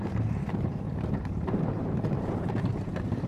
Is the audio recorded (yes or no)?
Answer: no